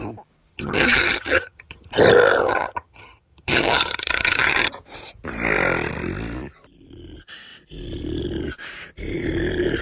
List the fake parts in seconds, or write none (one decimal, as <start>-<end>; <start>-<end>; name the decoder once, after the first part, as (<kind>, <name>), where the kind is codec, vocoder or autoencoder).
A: 0.5-1.9 (vocoder, HiFi-GAN); 2.4-4.7